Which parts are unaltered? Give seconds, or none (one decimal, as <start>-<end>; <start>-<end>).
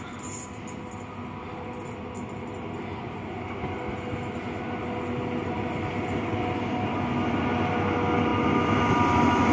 0.0-9.5